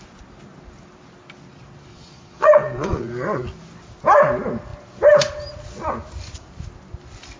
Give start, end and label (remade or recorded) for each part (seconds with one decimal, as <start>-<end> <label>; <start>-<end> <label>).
0.0-1.9 recorded; 1.9-3.1 remade; 3.1-7.4 recorded